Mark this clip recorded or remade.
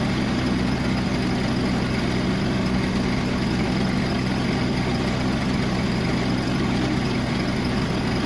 recorded